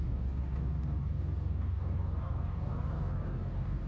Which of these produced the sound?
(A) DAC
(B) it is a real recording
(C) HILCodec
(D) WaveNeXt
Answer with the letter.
A